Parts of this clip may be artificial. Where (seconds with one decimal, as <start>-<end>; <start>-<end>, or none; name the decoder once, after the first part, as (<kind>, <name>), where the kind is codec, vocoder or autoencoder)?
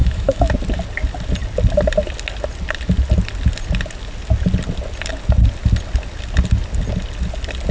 0.0-0.5 (autoencoder, DAC-VAE)